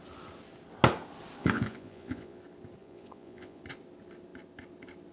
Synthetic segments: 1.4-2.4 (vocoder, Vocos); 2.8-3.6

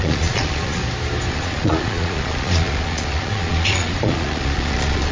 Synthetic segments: 0.0-0.8 (vocoder, Vocos); 1.3-5.1

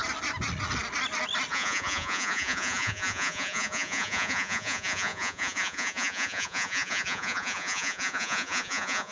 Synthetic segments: 1.5-9.1 (vocoder, Vocos)

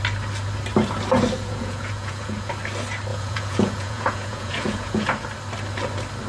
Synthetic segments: 1.4-2.5 (vocoder, Vocos); 3.1-5.1

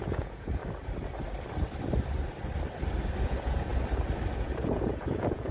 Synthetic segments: 0.0-0.6 (vocoder, Vocos); 3.2-3.7; 4.3-5.5

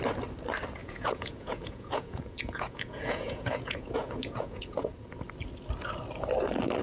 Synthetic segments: 0.8-4.9 (vocoder, Vocos)

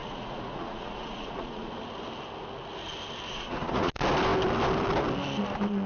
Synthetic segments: 0.0-1.7 (vocoder, Vocos); 3.3-3.9